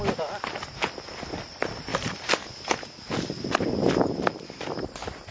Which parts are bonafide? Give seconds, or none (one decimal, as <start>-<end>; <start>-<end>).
0.0-5.3